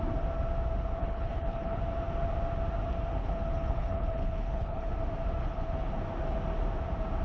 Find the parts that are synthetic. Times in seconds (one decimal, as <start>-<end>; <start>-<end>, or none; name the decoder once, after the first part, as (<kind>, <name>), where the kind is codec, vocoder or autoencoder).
1.0-1.8 (codec, HILCodec); 3.2-4.9; 5.4-5.9